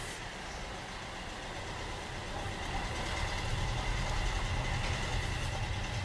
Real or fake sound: real